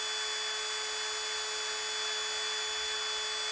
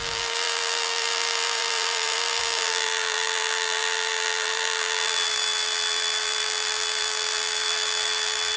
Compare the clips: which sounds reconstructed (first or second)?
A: second